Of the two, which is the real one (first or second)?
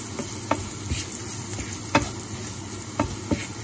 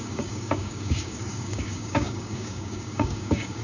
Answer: first